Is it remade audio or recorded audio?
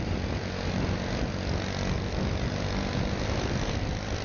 recorded